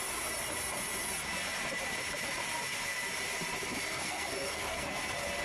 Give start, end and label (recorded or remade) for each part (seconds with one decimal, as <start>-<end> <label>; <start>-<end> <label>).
0.0-3.9 recorded; 3.9-5.0 remade; 5.0-5.4 recorded